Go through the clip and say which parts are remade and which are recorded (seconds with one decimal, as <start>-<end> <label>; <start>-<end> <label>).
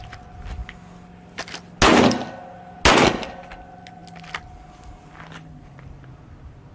0.0-6.7 recorded